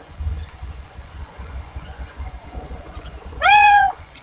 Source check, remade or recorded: remade